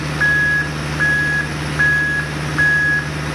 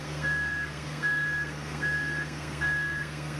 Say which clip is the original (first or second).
first